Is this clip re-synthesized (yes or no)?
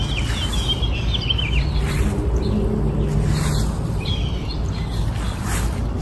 no